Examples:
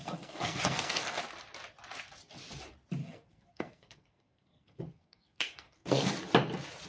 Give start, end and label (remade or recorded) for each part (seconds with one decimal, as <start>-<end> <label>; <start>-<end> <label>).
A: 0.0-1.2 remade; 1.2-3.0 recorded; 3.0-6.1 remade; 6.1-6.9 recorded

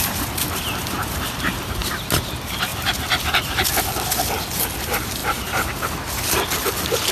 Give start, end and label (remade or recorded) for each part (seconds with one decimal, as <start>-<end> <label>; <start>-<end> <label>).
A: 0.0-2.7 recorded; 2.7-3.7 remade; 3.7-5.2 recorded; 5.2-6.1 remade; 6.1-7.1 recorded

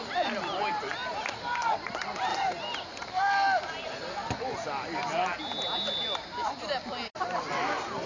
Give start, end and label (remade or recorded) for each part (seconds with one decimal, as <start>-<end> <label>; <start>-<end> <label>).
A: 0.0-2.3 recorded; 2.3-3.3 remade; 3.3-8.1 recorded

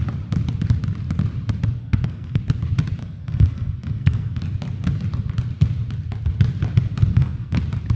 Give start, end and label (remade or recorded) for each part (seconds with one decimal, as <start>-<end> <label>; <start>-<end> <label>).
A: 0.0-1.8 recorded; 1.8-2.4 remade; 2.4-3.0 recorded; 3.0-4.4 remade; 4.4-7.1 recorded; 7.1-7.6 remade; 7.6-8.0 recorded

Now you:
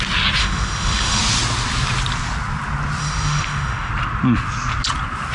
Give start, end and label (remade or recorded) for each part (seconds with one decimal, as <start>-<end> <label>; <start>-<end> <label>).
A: 0.0-0.4 recorded; 0.4-1.2 remade; 1.2-3.0 recorded; 3.0-3.9 remade; 3.9-5.3 recorded